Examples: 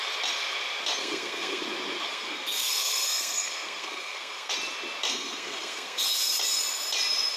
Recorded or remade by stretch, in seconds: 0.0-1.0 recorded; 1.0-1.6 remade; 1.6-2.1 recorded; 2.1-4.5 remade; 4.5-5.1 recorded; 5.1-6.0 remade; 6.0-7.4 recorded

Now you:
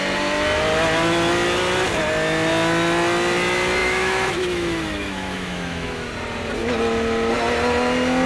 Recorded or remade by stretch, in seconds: 0.0-3.8 recorded; 3.8-6.1 remade; 6.1-8.3 recorded

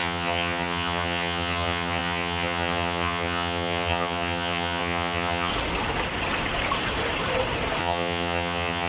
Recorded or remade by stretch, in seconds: 0.0-5.5 remade; 5.5-7.8 recorded; 7.8-8.9 remade